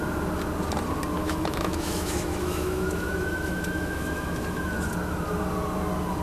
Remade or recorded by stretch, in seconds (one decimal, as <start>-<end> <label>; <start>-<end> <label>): 0.0-1.2 recorded; 1.2-4.9 remade; 4.9-6.2 recorded